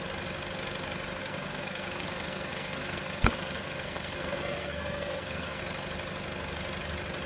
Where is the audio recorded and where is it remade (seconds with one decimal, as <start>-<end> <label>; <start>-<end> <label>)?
0.0-1.2 recorded; 1.2-5.6 remade; 5.6-7.3 recorded